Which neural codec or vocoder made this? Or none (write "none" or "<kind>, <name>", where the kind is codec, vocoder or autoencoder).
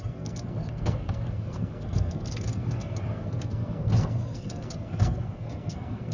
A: codec, SNAC